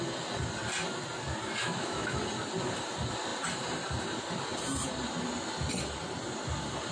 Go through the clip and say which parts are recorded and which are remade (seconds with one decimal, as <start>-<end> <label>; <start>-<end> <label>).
0.0-1.6 recorded; 1.6-2.2 remade; 2.2-6.9 recorded